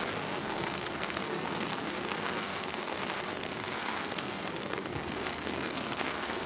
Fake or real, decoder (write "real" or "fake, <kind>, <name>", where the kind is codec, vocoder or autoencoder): fake, codec, SNAC